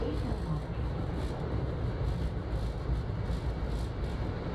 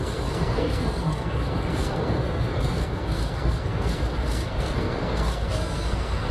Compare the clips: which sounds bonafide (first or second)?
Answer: first